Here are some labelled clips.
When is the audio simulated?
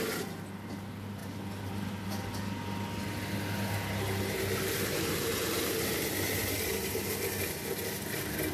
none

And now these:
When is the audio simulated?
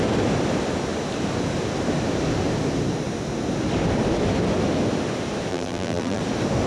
5.5-6.2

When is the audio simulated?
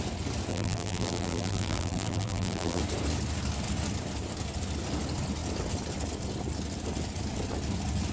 0.5-2.8